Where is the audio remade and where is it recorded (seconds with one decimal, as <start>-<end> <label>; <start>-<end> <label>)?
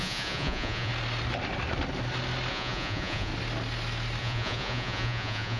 0.0-0.9 remade; 0.9-2.5 recorded; 2.5-3.3 remade; 3.3-4.2 recorded; 4.2-5.6 remade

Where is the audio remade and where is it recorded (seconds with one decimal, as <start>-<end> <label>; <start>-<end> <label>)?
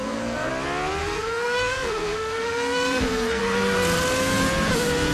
0.0-0.5 remade; 0.5-1.0 recorded; 1.0-3.4 remade; 3.4-5.1 recorded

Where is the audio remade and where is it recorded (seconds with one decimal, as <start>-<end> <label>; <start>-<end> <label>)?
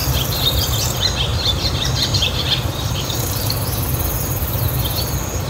0.0-0.6 remade; 0.6-1.3 recorded; 1.3-4.6 remade; 4.6-5.5 recorded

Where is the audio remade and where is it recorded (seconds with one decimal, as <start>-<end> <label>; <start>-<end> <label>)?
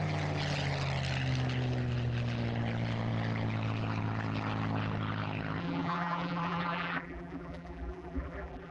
0.0-5.6 recorded; 5.6-8.7 remade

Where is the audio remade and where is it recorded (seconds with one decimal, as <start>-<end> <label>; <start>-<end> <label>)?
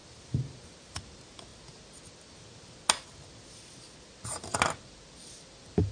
0.0-5.9 recorded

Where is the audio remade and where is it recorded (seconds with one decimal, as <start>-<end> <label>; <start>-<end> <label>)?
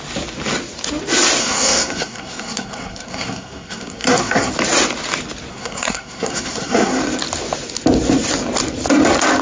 0.0-1.4 recorded; 1.4-4.5 remade; 4.5-5.5 recorded; 5.5-7.0 remade; 7.0-9.4 recorded